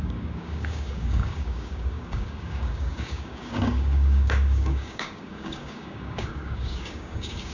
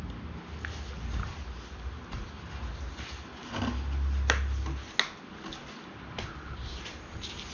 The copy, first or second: first